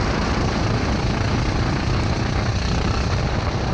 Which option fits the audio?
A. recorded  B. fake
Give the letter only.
B